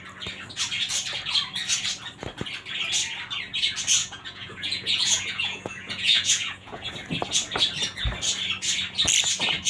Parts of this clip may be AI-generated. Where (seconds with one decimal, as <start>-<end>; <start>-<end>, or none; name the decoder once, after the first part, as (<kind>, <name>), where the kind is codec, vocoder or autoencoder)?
4.0-6.9 (vocoder, Vocos)

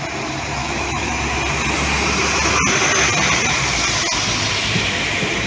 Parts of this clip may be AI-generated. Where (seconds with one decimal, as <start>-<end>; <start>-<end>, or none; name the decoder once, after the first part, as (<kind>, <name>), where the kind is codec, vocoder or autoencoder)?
0.6-1.1 (autoencoder, DAC-VAE)

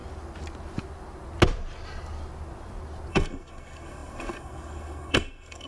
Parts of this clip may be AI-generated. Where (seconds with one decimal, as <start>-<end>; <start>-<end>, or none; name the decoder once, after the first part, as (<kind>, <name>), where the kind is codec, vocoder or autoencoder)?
3.1-5.7 (codec, SNAC)

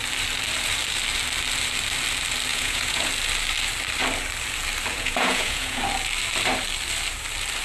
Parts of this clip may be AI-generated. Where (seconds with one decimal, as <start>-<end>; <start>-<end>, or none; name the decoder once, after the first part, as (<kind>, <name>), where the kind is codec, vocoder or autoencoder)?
2.5-3.1 (vocoder, Vocos); 4.9-5.8